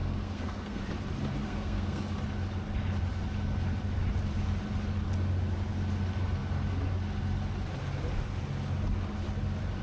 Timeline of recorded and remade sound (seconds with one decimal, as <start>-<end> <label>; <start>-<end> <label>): 0.0-0.8 remade; 0.8-1.4 recorded; 1.4-2.0 remade; 2.0-9.8 recorded